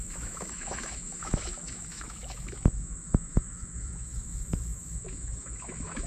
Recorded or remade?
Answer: remade